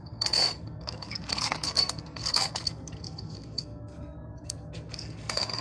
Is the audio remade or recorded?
remade